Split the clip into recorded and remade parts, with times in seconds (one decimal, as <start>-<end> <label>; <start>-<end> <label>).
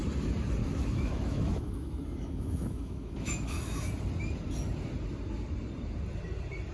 0.0-0.6 recorded; 0.6-3.9 remade; 3.9-6.7 recorded